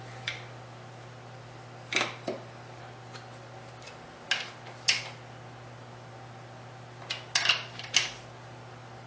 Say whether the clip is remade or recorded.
recorded